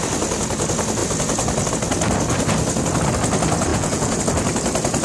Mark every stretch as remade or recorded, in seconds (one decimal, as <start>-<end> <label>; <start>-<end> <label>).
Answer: 0.0-3.7 recorded; 3.7-4.2 remade; 4.2-5.0 recorded